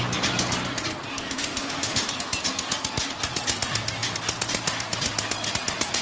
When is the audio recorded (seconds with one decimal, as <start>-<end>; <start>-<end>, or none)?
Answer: 0.0-1.1; 2.1-6.0